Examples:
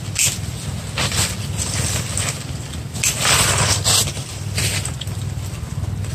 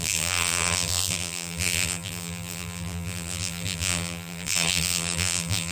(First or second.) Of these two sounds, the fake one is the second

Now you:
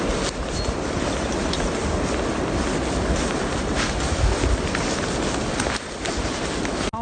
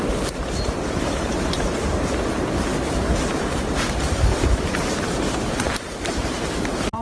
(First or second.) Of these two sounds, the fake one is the second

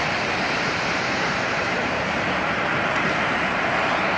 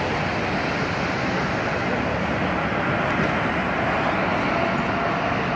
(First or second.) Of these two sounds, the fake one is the first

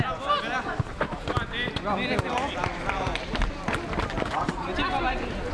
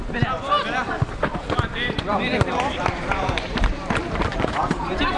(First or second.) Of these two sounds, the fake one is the second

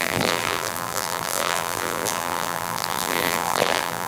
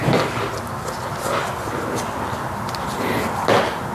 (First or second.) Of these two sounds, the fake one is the first